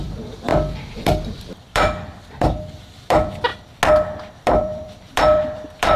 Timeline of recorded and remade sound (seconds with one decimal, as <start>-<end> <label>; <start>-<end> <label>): 0.0-3.5 remade; 3.5-4.3 recorded; 4.3-6.0 remade